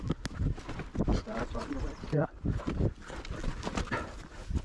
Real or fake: real